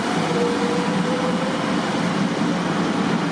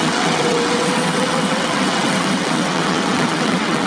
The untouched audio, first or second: first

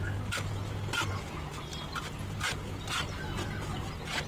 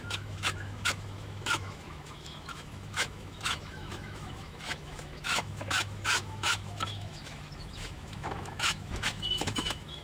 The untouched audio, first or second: first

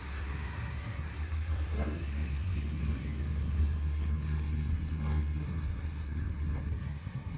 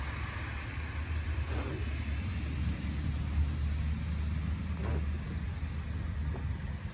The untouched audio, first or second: second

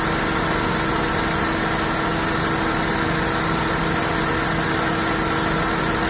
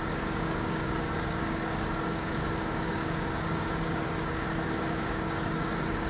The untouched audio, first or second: first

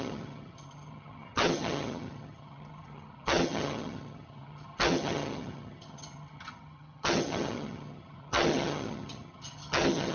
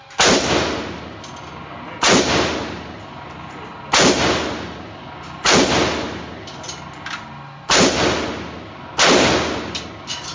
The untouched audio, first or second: second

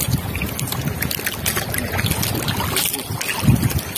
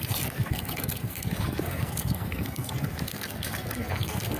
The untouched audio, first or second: first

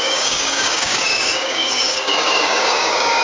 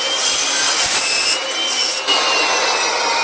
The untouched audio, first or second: second